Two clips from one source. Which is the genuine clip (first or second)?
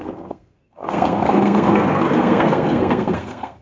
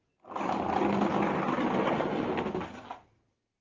second